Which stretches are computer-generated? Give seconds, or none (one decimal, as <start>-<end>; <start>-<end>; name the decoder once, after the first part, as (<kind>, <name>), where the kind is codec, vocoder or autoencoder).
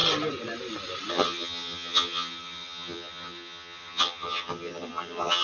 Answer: 1.1-5.4 (vocoder, HiFi-GAN)